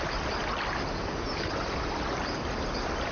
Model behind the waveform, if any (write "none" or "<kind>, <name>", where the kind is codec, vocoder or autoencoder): none